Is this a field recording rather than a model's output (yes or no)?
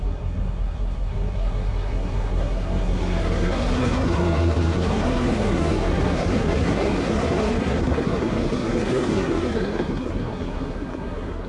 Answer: no